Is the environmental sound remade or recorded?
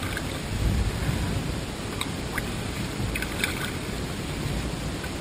recorded